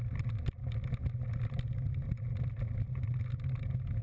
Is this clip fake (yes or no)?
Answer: no